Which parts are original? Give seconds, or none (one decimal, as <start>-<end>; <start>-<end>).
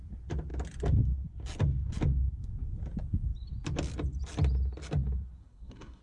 0.0-5.4